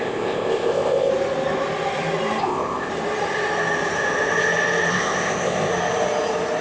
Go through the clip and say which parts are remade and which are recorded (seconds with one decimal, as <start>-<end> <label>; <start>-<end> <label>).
0.0-1.1 remade; 1.1-2.4 recorded; 2.4-2.9 remade; 2.9-4.9 recorded; 4.9-5.7 remade; 5.7-6.6 recorded